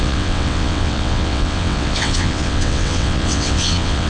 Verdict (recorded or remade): remade